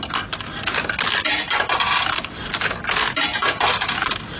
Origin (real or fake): real